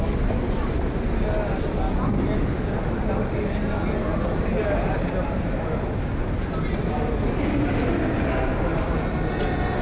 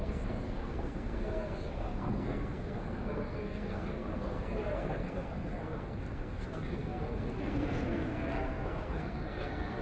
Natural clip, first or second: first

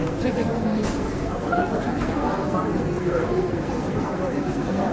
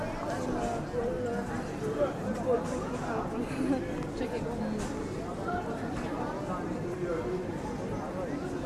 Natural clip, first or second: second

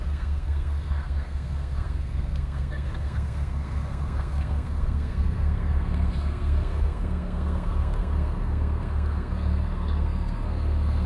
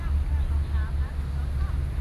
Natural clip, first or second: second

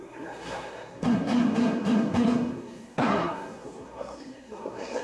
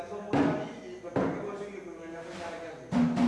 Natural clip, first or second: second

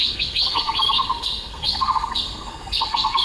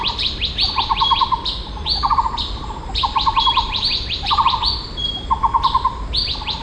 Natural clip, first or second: second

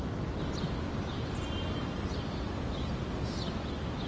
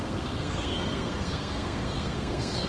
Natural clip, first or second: first